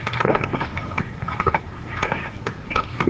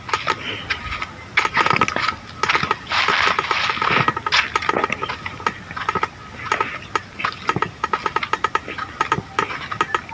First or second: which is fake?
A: first